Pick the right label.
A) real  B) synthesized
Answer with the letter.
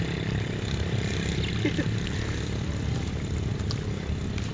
A